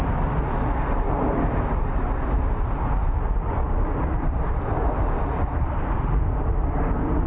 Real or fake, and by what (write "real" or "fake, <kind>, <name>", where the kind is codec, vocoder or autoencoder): real